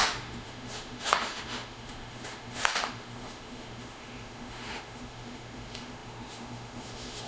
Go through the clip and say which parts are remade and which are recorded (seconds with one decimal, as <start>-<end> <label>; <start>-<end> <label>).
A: 0.0-7.3 remade